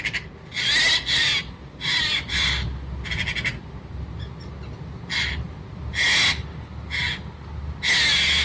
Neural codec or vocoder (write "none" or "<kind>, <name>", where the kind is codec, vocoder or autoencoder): none